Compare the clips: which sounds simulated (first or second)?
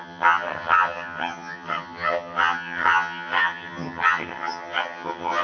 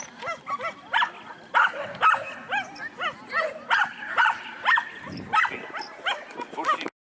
first